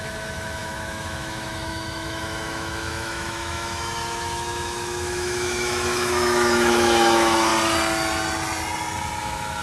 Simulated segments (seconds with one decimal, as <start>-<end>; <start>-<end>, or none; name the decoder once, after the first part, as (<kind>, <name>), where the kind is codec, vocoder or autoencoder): 0.0-7.5 (autoencoder, DAC-VAE); 9.2-9.6